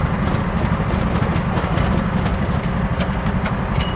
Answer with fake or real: real